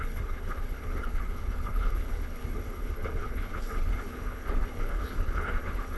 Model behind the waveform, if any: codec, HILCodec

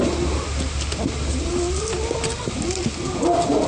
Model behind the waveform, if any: none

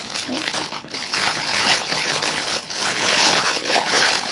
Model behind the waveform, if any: codec, HILCodec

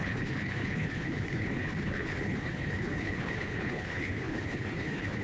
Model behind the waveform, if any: codec, HILCodec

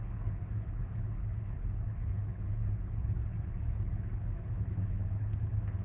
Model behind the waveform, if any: codec, HILCodec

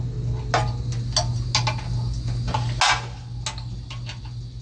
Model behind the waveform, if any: none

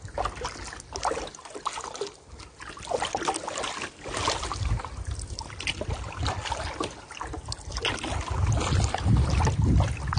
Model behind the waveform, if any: none